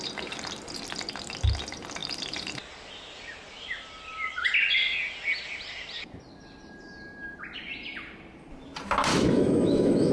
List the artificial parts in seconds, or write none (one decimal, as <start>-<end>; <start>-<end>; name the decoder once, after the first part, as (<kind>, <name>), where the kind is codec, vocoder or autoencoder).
9.1-10.1 (autoencoder, DAC-VAE)